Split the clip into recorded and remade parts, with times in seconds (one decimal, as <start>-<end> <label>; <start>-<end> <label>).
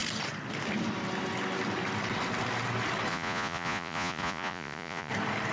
0.0-3.1 recorded; 3.1-5.1 remade; 5.1-5.5 recorded